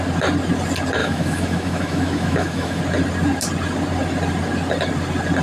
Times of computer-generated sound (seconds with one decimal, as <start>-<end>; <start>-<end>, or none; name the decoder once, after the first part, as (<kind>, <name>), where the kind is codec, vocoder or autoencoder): 1.0-2.8 (autoencoder, DAC-VAE)